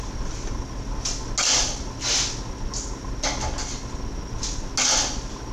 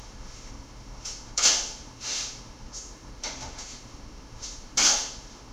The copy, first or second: second